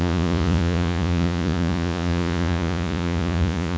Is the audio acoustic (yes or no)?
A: no